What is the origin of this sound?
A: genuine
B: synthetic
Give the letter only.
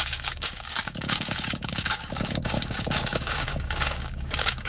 B